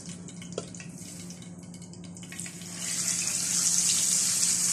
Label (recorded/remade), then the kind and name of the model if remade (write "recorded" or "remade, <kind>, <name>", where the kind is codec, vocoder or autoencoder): recorded